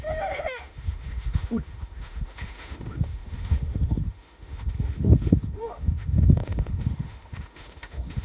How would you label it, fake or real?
fake